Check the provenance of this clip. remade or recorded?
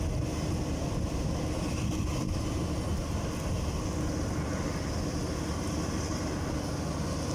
recorded